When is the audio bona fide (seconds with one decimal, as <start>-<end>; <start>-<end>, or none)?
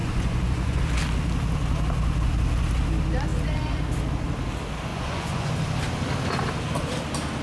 0.8-4.9; 5.5-7.4